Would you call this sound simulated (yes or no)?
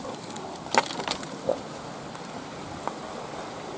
no